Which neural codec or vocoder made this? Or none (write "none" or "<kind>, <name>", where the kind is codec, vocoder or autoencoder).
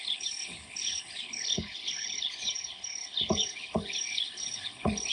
codec, HILCodec